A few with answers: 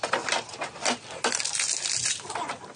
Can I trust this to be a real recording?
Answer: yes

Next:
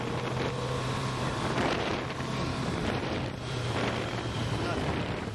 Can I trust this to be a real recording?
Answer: no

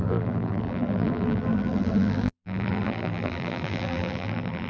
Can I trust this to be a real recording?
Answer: no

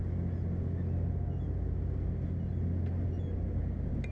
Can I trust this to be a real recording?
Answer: yes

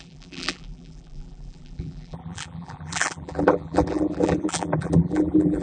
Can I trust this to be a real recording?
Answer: no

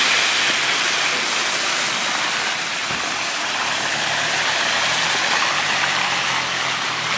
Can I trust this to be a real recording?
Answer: yes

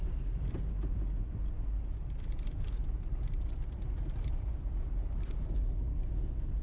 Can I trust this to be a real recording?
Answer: yes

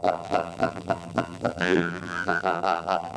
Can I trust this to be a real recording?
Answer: no